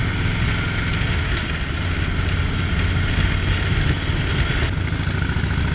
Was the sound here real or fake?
real